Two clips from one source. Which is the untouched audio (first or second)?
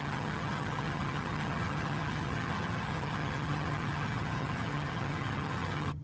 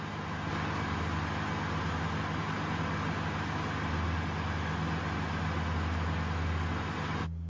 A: second